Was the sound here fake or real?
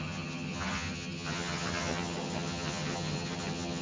fake